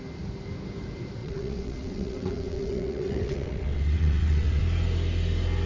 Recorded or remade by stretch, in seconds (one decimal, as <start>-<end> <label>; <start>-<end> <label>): 0.0-1.2 recorded; 1.2-4.6 remade; 4.6-5.7 recorded